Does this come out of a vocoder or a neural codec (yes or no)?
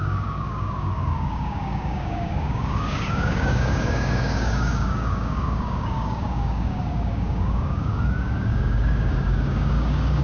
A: yes